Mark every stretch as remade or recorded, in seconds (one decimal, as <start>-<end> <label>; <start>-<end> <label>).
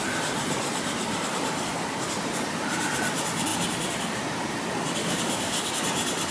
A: 0.0-5.0 recorded; 5.0-5.7 remade; 5.7-6.3 recorded